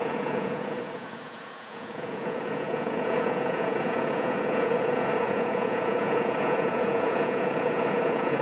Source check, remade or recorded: remade